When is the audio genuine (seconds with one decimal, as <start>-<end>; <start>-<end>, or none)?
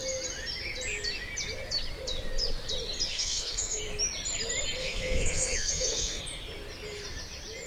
0.0-3.1; 3.8-4.8; 6.2-7.7